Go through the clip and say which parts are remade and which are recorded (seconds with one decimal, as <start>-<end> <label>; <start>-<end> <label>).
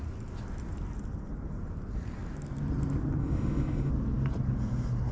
0.0-3.2 recorded; 3.2-3.9 remade; 3.9-5.1 recorded